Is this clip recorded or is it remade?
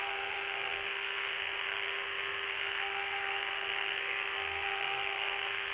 remade